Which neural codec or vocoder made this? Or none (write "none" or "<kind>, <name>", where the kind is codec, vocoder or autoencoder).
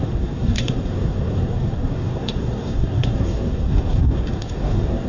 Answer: codec, SNAC